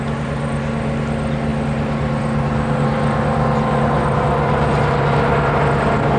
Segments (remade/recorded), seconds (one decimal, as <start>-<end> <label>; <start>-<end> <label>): 0.0-6.2 recorded